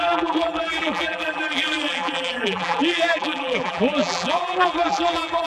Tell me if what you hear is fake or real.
fake